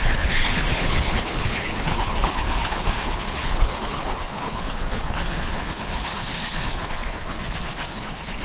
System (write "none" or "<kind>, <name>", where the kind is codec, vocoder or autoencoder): codec, HILCodec